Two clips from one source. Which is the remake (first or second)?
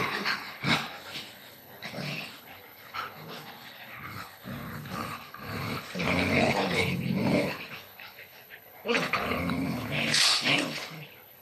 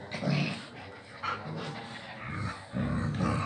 first